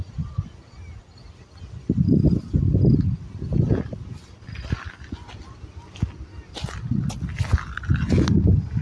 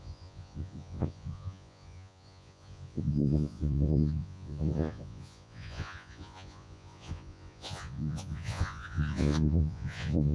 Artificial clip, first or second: second